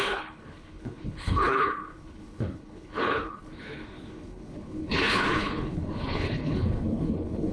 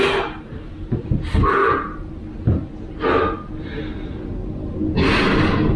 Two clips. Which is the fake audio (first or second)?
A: first